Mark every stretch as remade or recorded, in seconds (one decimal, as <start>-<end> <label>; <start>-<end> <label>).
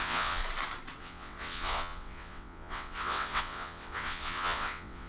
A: 0.0-0.4 remade; 0.4-1.0 recorded; 1.0-5.1 remade